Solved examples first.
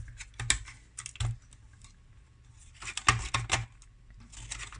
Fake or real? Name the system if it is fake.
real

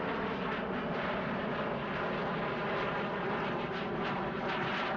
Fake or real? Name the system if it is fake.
real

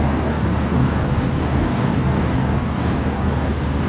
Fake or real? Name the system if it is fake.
fake, codec, DAC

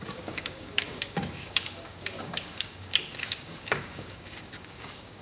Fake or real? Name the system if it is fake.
fake, codec, DAC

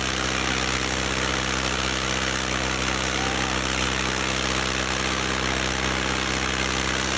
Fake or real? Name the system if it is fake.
real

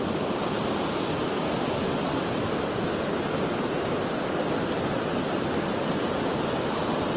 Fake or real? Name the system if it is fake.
real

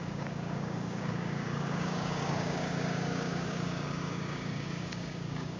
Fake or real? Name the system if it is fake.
fake, codec, DAC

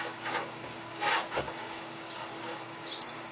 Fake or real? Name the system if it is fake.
fake, codec, DAC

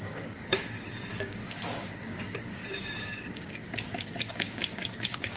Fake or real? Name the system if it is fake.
fake, codec, DAC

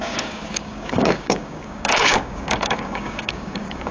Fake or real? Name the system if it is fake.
fake, codec, DAC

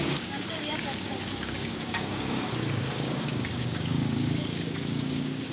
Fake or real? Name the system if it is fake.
fake, codec, DAC